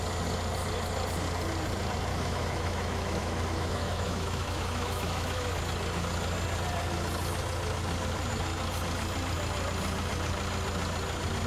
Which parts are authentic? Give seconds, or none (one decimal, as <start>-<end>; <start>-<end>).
0.0-2.1; 5.6-11.5